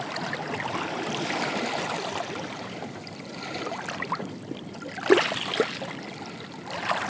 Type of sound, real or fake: real